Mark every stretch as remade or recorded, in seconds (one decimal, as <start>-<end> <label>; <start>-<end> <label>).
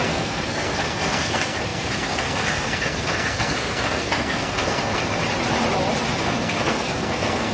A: 0.0-5.2 remade; 5.2-6.2 recorded; 6.2-7.5 remade